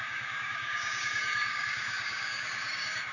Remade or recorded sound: remade